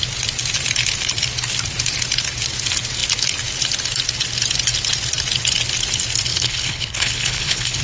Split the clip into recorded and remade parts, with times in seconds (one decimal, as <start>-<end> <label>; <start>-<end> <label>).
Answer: 0.0-6.3 recorded; 6.3-7.8 remade